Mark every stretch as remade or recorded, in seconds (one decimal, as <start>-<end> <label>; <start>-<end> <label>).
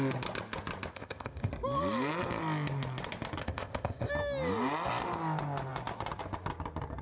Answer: 0.0-0.9 recorded; 0.9-1.5 remade; 1.5-3.4 recorded; 3.4-4.1 remade; 4.1-7.0 recorded